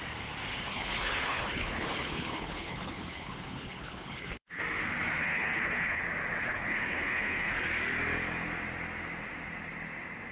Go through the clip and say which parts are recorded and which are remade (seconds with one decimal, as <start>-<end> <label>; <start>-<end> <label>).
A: 0.0-0.6 recorded; 0.6-4.6 remade; 4.6-5.2 recorded; 5.2-6.0 remade; 6.0-6.4 recorded; 6.4-7.5 remade; 7.5-10.3 recorded